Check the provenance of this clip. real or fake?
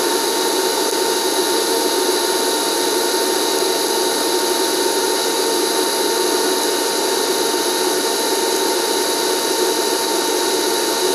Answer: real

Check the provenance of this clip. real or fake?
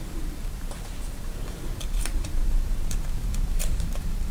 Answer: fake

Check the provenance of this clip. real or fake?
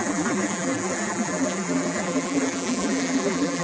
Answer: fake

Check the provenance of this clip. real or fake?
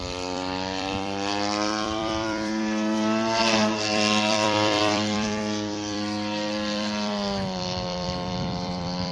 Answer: fake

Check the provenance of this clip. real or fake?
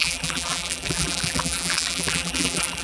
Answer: fake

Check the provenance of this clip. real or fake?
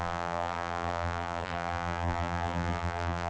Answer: fake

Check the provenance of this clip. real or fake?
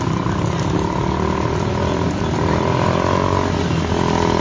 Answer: real